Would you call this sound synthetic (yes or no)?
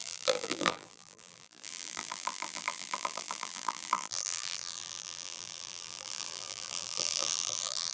yes